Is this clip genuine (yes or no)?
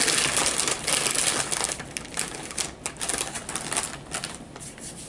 yes